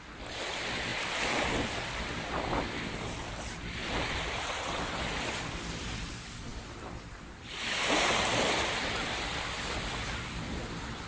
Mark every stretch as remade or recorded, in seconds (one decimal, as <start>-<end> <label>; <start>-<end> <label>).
0.0-0.9 recorded; 0.9-1.5 remade; 1.5-3.8 recorded; 3.8-6.1 remade; 6.1-11.1 recorded